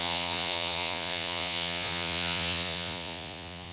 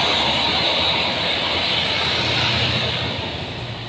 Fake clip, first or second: first